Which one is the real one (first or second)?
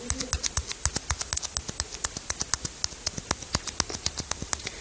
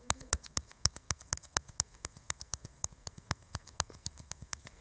first